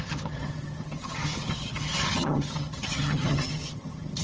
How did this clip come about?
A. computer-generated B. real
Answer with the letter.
A